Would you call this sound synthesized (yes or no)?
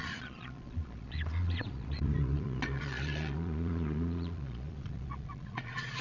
yes